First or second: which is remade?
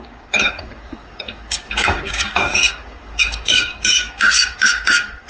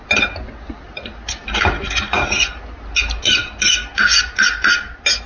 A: first